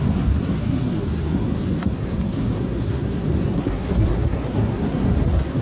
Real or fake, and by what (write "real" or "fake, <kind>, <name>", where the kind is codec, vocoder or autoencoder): fake, codec, SNAC